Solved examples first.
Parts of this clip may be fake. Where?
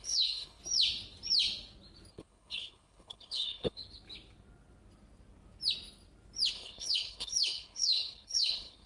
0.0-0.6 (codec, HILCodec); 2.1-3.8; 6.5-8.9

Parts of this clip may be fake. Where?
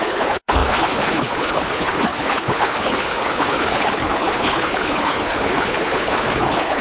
0.0-6.8 (codec, HILCodec)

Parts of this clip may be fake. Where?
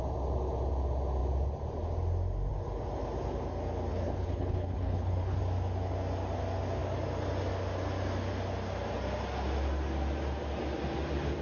3.9-5.4 (codec, HILCodec)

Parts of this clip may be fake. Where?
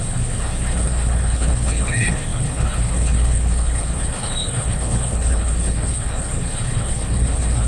0.0-7.7 (codec, HILCodec)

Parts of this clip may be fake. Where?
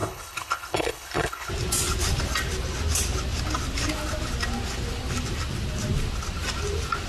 0.0-1.5 (codec, HILCodec)